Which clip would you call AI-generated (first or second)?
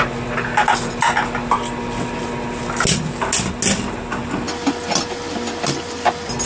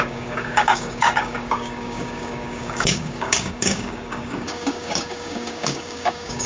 second